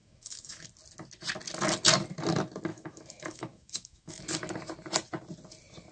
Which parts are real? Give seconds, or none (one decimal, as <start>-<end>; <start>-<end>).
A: 0.7-2.7; 4.2-5.9